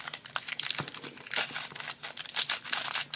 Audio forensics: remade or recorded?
recorded